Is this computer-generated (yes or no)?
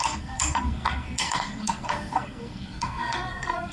yes